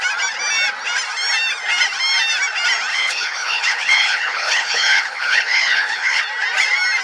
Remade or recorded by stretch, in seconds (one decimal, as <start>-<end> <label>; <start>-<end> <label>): 0.0-2.9 recorded; 2.9-6.2 remade; 6.2-7.0 recorded

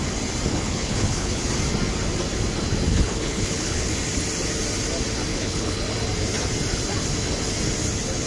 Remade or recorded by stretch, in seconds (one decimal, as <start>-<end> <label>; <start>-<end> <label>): 0.0-0.5 recorded; 0.5-1.4 remade; 1.4-2.9 recorded; 2.9-3.9 remade; 3.9-5.3 recorded; 5.3-5.8 remade; 5.8-8.3 recorded

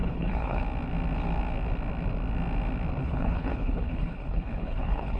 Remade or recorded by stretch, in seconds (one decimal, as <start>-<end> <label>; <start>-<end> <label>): 0.0-0.6 remade; 0.6-3.0 recorded; 3.0-5.2 remade

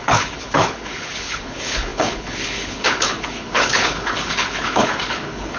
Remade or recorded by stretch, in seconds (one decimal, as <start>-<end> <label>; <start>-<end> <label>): 0.0-5.6 remade

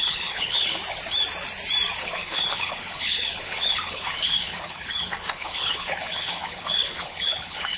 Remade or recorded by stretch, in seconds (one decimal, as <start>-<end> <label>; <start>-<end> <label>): 0.0-0.8 remade; 0.8-2.0 recorded; 2.0-7.8 remade

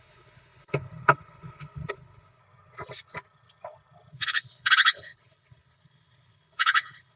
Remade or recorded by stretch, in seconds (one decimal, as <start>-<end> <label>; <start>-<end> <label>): 0.0-2.4 remade; 2.4-4.1 recorded; 4.1-7.2 remade